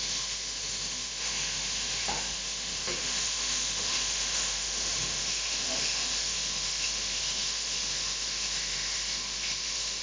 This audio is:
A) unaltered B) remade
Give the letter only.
B